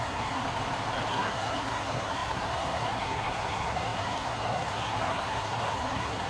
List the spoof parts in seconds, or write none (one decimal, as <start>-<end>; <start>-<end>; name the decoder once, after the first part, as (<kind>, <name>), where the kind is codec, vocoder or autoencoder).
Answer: 0.0-0.4 (codec, SNAC); 1.1-6.3